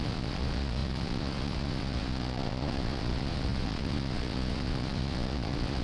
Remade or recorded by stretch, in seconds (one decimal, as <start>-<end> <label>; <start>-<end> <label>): 0.0-5.8 remade